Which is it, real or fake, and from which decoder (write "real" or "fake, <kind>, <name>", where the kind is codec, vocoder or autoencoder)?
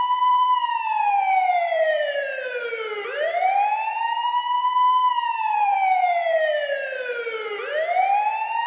fake, vocoder, BigVGAN v2